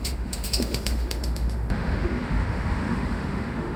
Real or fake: fake